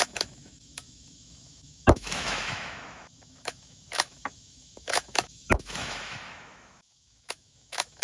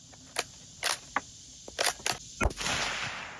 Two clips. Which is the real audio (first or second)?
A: second